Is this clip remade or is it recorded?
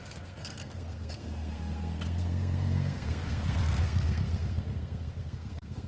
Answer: remade